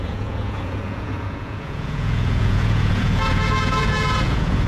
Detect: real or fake fake